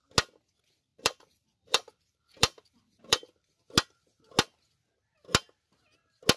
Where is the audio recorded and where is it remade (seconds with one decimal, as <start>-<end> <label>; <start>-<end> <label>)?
0.0-0.9 recorded; 0.9-3.5 remade; 3.5-6.4 recorded